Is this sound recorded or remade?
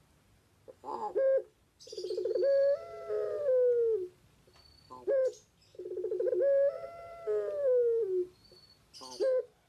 recorded